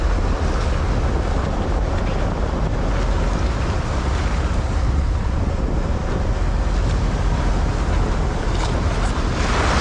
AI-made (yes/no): no